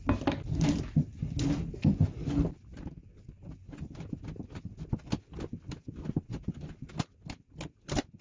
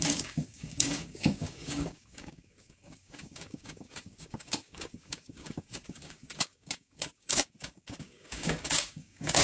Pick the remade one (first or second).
second